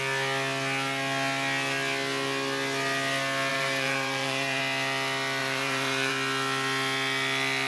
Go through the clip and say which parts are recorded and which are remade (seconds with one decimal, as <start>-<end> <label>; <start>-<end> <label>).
0.0-3.5 recorded; 3.5-4.6 remade; 4.6-5.4 recorded; 5.4-6.1 remade; 6.1-7.7 recorded